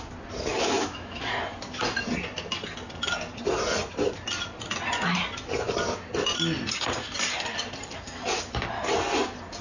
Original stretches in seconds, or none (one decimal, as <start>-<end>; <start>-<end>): 0.0-0.5; 1.2-9.6